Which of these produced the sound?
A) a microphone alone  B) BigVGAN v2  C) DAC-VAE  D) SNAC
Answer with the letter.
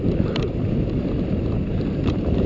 B